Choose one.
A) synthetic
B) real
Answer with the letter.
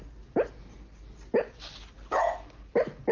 B